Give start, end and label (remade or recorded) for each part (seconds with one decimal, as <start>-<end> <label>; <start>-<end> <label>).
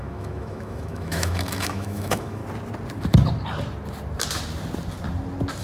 0.0-2.4 remade; 2.4-5.6 recorded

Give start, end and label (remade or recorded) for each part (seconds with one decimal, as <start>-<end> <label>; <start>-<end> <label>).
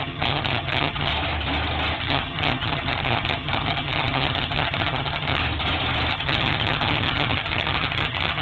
0.0-1.1 remade; 1.1-2.0 recorded; 2.0-5.4 remade; 5.4-6.1 recorded; 6.1-8.4 remade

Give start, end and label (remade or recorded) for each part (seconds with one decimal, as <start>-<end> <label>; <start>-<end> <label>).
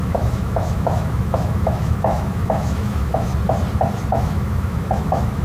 0.0-3.3 remade; 3.3-4.1 recorded; 4.1-5.4 remade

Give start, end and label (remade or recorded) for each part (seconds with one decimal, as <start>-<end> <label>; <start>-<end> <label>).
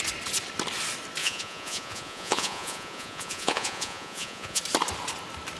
0.0-1.2 recorded; 1.2-4.6 remade; 4.6-5.6 recorded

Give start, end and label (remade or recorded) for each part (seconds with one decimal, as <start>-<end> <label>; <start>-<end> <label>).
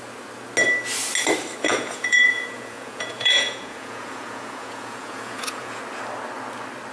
0.0-1.7 recorded; 1.7-5.8 remade; 5.8-6.9 recorded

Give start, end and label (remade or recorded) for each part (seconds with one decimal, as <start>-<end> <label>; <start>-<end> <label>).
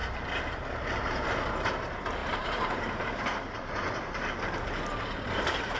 0.0-1.5 remade; 1.5-2.2 recorded; 2.2-5.8 remade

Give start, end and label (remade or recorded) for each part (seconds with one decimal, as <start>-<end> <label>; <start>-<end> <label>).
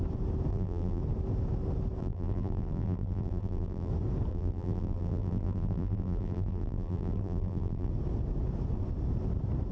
0.0-0.5 recorded; 0.5-1.0 remade; 1.0-2.0 recorded; 2.0-3.9 remade; 3.9-4.3 recorded; 4.3-7.9 remade; 7.9-9.7 recorded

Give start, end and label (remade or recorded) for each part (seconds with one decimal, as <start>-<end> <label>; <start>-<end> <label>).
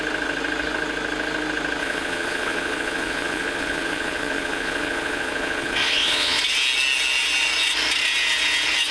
0.0-1.8 recorded; 1.8-6.4 remade; 6.4-8.9 recorded